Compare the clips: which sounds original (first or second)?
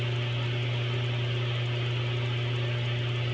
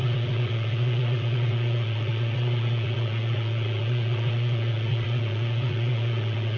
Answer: first